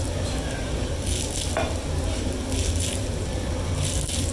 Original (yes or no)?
yes